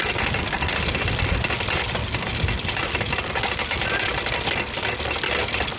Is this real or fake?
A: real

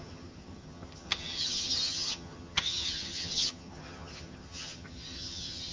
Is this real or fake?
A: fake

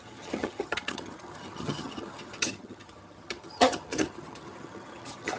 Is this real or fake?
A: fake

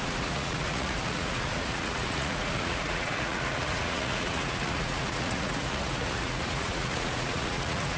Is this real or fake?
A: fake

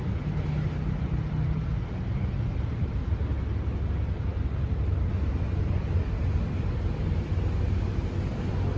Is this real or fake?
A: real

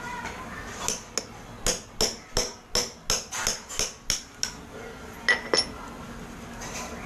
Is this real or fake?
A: real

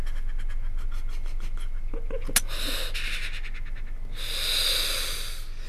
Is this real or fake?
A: real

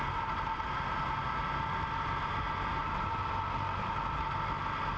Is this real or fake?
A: real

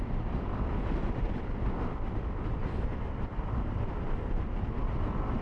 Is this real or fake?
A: fake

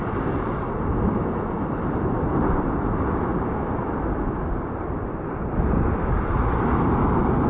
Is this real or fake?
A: real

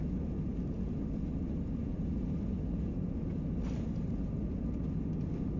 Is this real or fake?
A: real